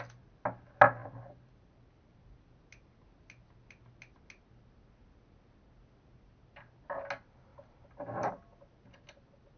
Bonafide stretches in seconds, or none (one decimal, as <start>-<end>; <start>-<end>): 0.0-1.0; 2.5-7.5; 8.3-9.6